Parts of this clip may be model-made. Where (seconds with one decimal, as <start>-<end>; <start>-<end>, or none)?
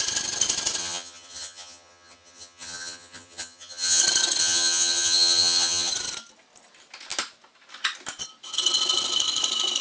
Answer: 0.8-4.0; 4.4-5.9